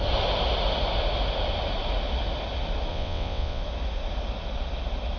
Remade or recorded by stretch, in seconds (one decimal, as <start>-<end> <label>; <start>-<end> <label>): 0.0-2.9 recorded; 2.9-3.6 remade; 3.6-5.2 recorded